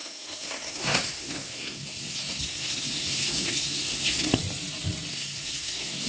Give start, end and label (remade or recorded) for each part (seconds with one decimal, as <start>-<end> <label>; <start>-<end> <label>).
0.0-4.3 remade; 4.3-5.1 recorded; 5.1-6.1 remade